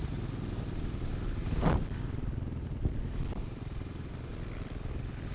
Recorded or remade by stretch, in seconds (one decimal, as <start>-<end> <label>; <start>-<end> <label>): 0.0-5.3 recorded